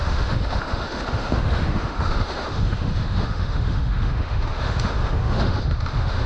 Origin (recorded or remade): remade